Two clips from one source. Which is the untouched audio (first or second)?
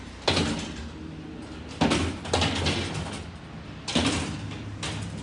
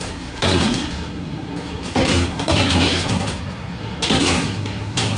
first